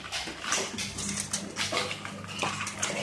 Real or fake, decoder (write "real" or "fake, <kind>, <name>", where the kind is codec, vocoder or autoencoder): fake, vocoder, BigVGAN v2